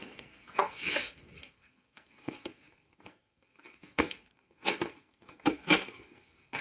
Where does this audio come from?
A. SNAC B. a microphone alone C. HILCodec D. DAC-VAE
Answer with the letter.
A